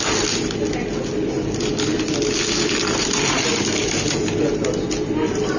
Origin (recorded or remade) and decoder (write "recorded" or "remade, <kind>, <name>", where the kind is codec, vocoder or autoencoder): recorded